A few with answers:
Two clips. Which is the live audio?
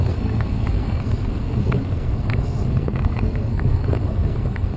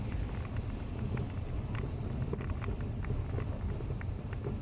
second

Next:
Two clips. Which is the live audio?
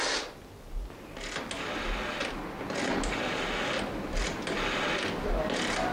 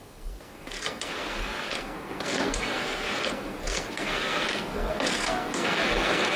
first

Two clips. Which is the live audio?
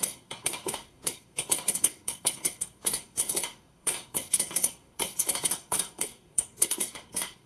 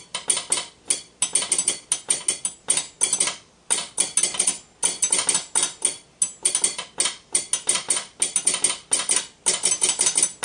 second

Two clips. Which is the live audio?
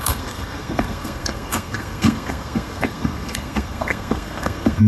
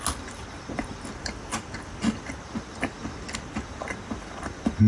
second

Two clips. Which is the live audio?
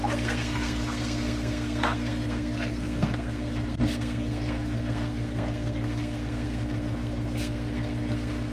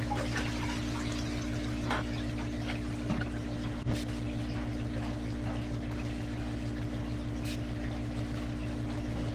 second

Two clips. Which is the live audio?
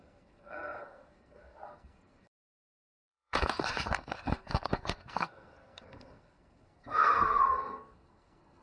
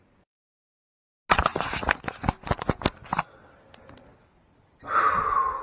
second